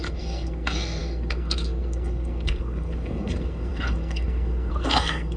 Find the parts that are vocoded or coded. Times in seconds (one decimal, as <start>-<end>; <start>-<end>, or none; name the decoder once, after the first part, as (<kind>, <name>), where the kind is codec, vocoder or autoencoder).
0.0-5.4 (codec, SNAC)